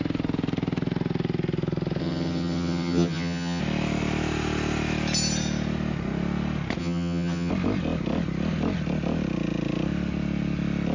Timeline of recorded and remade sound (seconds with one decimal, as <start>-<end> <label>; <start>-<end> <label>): 0.0-2.0 recorded; 2.0-3.6 remade; 3.6-6.8 recorded; 6.8-7.5 remade; 7.5-10.9 recorded